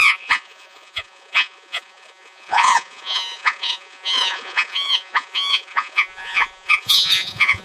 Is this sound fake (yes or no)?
yes